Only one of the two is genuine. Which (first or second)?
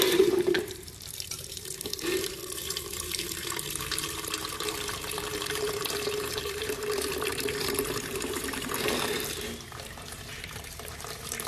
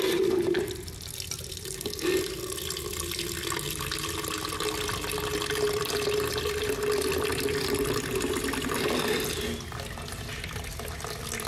second